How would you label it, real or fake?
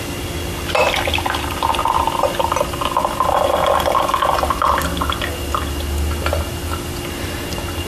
real